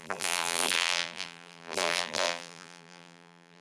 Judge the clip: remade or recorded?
remade